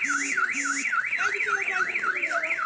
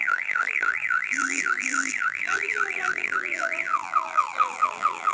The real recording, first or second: first